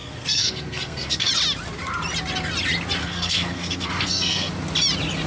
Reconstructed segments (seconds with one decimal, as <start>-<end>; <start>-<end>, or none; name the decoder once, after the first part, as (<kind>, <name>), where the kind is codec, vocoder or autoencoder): 0.0-1.3 (codec, SNAC); 3.0-4.5